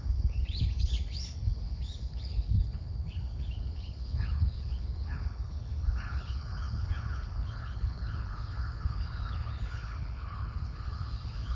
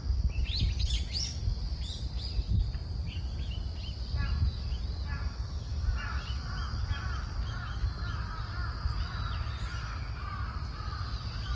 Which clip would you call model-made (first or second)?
first